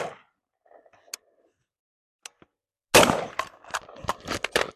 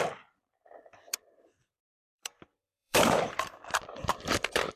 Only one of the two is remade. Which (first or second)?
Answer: second